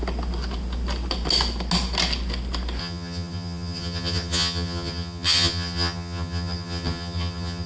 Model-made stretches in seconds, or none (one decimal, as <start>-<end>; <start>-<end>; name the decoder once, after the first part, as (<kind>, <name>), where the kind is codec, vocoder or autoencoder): 2.8-7.7 (vocoder, HiFi-GAN)